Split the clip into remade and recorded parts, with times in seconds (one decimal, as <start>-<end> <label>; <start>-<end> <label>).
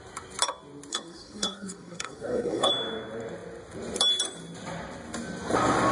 0.0-0.9 recorded; 0.9-2.7 remade; 2.7-5.9 recorded